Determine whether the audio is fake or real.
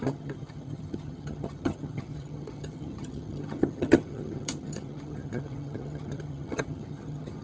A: fake